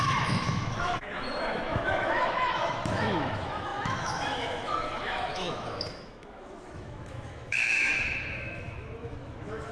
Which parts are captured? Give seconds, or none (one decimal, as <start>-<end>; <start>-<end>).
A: none